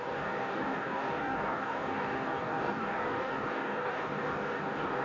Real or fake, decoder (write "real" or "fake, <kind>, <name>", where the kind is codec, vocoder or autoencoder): fake, codec, DAC